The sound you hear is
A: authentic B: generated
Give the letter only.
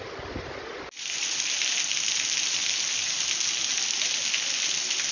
A